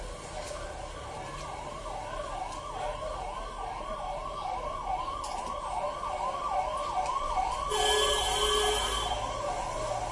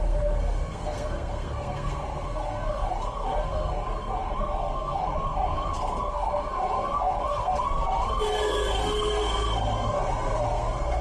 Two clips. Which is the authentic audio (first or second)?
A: first